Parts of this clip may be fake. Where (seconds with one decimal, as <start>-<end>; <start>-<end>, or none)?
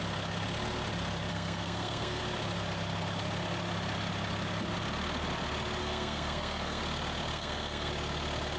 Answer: 1.3-2.2; 5.8-6.8; 7.3-7.9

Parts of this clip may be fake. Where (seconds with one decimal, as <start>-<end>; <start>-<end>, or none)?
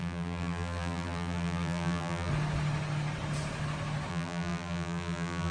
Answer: 0.0-2.3; 4.1-5.5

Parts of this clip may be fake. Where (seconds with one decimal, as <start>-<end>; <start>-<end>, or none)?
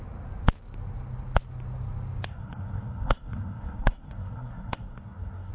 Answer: 2.3-5.5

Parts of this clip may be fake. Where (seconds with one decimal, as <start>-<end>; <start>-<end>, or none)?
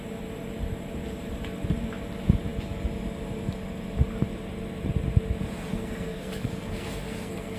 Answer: 5.7-7.6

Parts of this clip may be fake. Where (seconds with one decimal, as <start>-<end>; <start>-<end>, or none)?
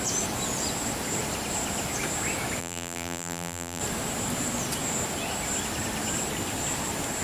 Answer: 2.6-3.8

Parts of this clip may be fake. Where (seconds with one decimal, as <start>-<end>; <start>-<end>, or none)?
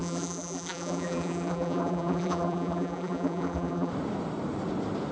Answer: 0.0-3.9